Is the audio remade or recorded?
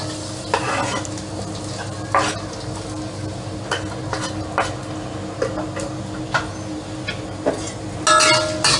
recorded